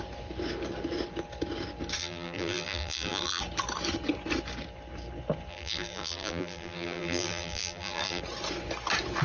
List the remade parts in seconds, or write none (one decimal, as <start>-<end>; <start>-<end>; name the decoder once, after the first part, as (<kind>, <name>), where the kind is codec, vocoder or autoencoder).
2.0-3.4 (vocoder, BigVGAN v2); 5.5-8.2